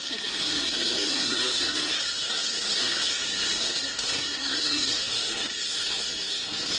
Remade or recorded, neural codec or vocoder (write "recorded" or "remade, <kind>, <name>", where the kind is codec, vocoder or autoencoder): remade, codec, SNAC